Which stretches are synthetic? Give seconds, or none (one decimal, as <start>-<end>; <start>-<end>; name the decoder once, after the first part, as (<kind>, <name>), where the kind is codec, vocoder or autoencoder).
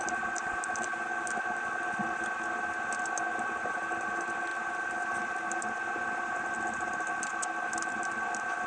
none